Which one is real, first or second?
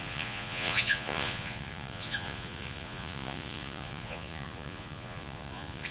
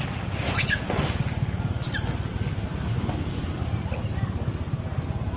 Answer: second